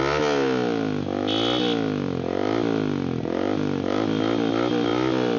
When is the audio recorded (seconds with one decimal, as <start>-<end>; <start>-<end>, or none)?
0.0-5.4